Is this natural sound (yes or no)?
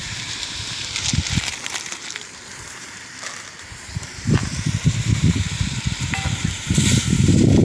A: no